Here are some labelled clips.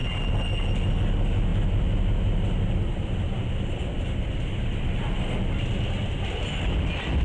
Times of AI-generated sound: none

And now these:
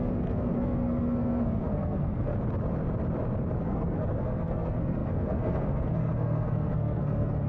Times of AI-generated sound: 0.0-2.3 (codec, SNAC); 3.6-7.5